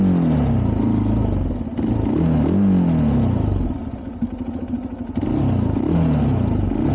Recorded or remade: recorded